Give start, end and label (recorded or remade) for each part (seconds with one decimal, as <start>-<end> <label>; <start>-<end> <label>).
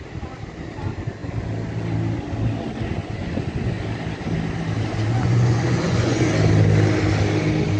0.0-3.0 recorded; 3.0-3.8 remade; 3.8-5.1 recorded; 5.1-6.3 remade; 6.3-7.8 recorded